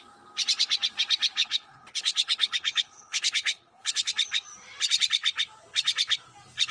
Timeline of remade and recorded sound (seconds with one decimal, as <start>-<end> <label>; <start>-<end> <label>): 0.0-1.4 recorded; 1.4-4.1 remade; 4.1-6.7 recorded